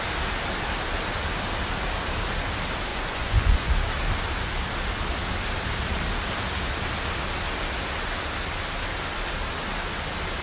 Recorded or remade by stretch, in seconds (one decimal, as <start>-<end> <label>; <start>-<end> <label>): 0.0-2.9 recorded; 2.9-3.7 remade; 3.7-10.4 recorded